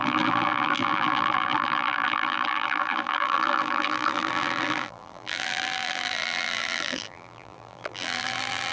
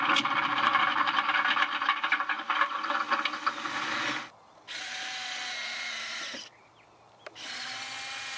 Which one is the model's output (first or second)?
first